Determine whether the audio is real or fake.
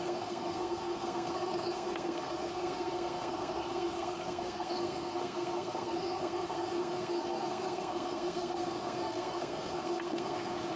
fake